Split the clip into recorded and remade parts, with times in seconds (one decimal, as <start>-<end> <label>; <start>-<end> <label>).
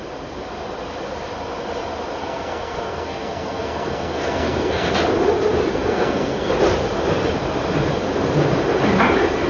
0.0-2.2 recorded; 2.2-4.9 remade; 4.9-5.7 recorded; 5.7-6.5 remade; 6.5-9.5 recorded